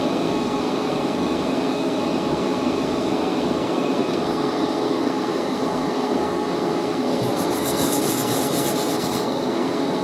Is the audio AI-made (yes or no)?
yes